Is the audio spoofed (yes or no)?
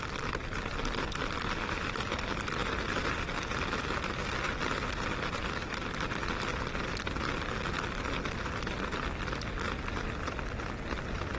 no